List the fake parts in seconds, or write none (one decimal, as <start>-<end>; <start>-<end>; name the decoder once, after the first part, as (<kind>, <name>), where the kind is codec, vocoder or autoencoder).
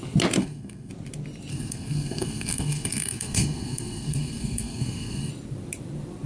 0.4-0.9 (codec, SNAC); 1.5-5.3